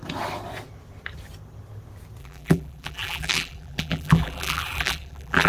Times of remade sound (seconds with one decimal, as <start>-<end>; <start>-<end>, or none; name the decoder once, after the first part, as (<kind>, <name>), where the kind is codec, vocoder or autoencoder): 2.2-5.5 (vocoder, BigVGAN v2)